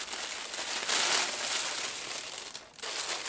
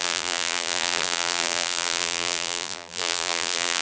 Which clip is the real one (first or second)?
first